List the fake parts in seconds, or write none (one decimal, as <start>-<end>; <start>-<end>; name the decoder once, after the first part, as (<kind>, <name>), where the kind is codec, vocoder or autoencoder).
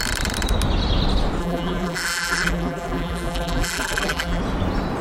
1.4-4.4 (vocoder, BigVGAN v2)